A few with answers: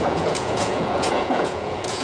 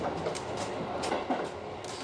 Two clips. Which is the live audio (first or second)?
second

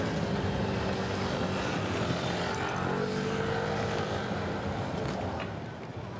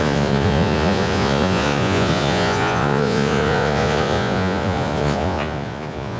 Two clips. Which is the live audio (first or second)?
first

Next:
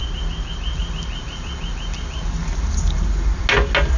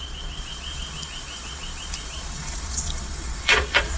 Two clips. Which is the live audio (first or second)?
first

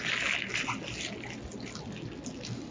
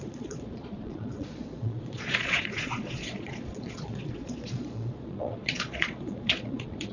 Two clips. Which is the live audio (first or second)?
first